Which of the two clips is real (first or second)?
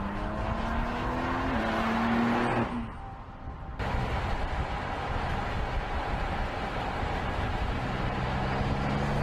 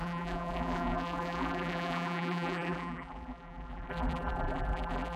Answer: first